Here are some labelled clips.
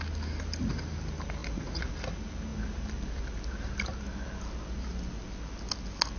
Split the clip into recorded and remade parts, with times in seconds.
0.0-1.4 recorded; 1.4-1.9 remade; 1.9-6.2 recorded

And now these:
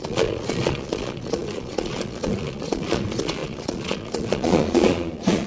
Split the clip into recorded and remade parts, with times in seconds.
0.0-5.5 remade

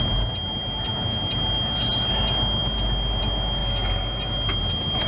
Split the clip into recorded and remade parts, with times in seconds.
0.0-5.1 recorded

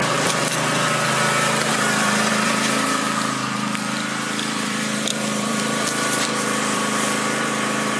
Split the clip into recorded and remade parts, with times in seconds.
0.0-0.4 remade; 0.4-1.7 recorded; 1.7-8.0 remade